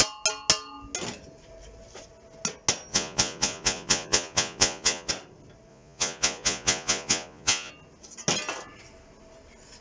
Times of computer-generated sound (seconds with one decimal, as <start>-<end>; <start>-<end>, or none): 2.9-5.1; 5.7-7.7